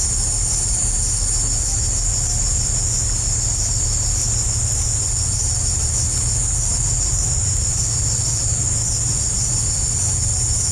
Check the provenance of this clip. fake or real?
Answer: real